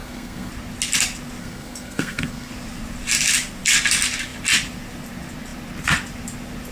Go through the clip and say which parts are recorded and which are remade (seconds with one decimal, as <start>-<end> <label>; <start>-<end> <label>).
0.0-0.5 remade; 0.5-1.4 recorded; 1.4-2.5 remade; 2.5-6.7 recorded